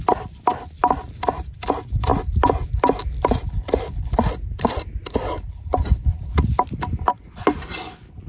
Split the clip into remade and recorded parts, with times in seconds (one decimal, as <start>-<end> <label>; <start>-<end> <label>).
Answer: 0.0-8.3 recorded